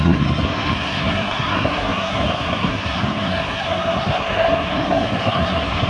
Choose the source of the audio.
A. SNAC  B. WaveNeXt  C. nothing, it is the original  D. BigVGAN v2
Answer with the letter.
A